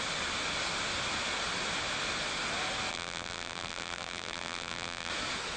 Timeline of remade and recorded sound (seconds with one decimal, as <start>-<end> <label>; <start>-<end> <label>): 0.0-2.9 recorded; 2.9-5.1 remade; 5.1-5.6 recorded